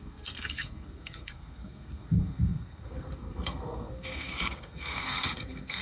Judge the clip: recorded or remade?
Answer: remade